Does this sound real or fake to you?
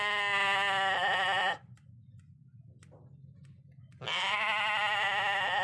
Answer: real